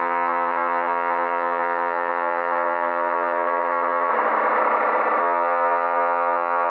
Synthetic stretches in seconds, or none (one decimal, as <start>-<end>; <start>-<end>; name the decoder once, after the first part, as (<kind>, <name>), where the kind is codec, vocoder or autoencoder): 0.0-4.1 (vocoder, HiFi-GAN); 5.2-6.7